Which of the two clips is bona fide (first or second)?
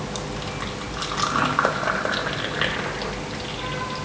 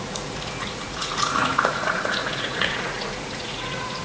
first